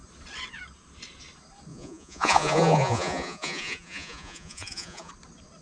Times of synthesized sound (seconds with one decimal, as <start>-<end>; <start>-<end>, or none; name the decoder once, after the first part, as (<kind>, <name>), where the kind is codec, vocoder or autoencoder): 1.7-5.1 (vocoder, Vocos)